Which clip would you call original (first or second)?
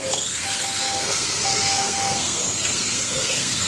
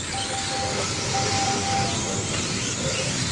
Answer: second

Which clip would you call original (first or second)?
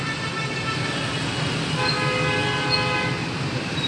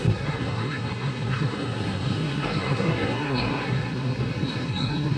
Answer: first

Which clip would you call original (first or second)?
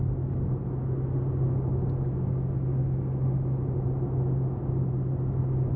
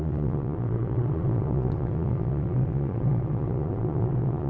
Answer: first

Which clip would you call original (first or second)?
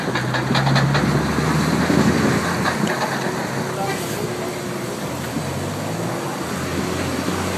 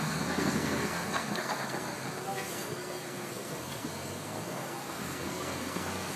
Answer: first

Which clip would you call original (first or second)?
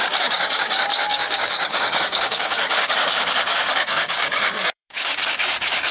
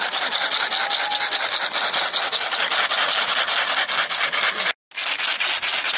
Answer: second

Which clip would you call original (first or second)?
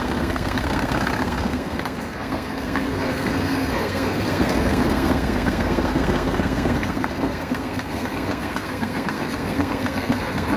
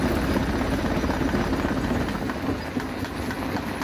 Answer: second